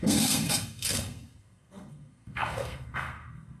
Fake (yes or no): yes